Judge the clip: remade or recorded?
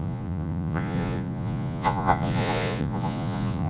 remade